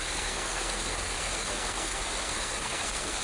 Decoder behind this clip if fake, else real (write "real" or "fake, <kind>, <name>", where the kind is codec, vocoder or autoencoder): fake, codec, SNAC